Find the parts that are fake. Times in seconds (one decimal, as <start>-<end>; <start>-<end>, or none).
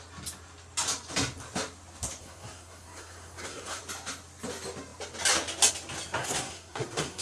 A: 2.2-3.8; 6.2-7.2